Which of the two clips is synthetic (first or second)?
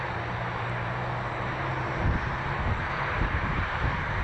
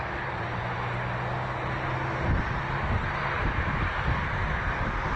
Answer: first